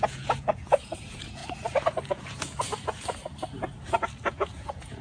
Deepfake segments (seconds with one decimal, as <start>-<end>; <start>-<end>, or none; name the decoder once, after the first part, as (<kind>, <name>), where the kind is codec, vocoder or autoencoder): 0.0-1.4 (vocoder, Vocos); 2.1-2.7; 4.3-5.0